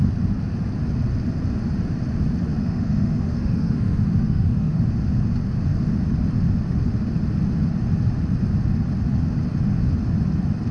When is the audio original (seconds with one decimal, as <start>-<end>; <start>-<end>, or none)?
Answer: 0.0-2.6; 4.8-10.7